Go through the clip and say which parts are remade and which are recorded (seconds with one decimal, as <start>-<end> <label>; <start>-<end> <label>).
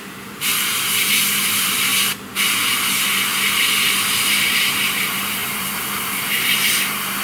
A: 0.0-1.9 remade; 1.9-4.2 recorded; 4.2-7.2 remade